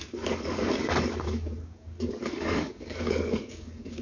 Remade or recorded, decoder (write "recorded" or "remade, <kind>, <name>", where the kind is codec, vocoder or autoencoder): remade, codec, DAC